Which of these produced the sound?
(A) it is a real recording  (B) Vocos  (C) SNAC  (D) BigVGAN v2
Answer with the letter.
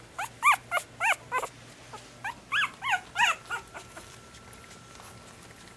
A